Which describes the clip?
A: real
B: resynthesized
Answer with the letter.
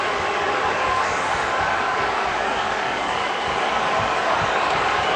B